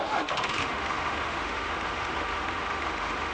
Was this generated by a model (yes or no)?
yes